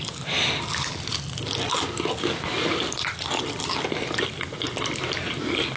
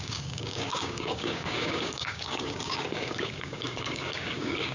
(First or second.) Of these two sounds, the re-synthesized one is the second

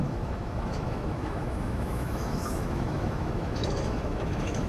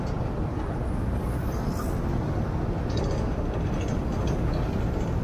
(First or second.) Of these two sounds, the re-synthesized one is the first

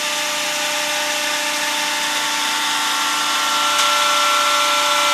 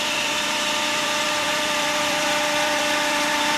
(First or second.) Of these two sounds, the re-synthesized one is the second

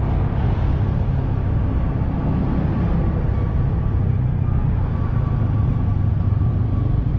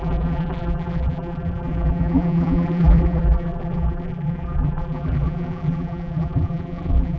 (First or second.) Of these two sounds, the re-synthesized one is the second